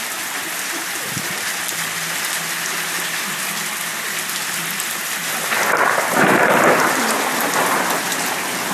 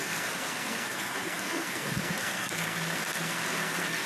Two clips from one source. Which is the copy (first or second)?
second